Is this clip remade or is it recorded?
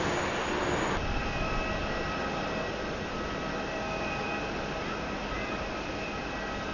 recorded